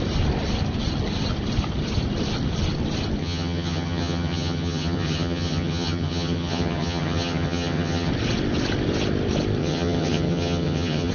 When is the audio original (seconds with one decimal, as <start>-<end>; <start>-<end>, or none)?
0.0-3.2; 8.1-9.6